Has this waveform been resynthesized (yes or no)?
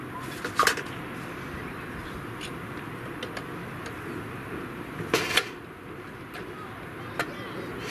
no